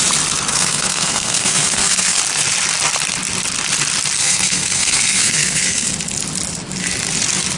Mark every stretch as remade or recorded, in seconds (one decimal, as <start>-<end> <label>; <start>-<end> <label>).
0.0-0.5 recorded; 0.5-2.2 remade; 2.2-4.2 recorded; 4.2-5.9 remade; 5.9-7.6 recorded